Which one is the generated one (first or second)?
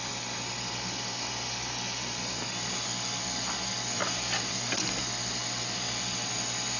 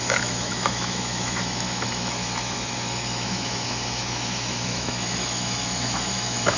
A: second